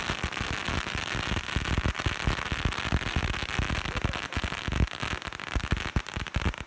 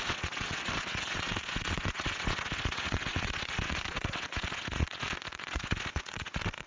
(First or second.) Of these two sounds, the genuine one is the first